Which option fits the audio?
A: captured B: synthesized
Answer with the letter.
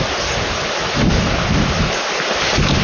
A